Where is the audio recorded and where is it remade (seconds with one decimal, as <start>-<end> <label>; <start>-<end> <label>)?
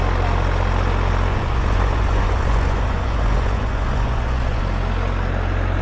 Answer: 0.0-1.3 recorded; 1.3-4.6 remade; 4.6-5.8 recorded